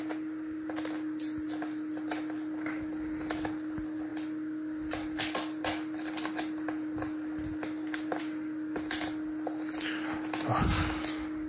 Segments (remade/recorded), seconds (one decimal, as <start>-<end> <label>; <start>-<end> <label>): 0.0-11.5 recorded